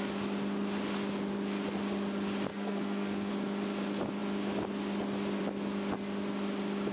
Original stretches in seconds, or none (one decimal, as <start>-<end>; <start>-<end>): 0.0-2.5; 3.3-6.9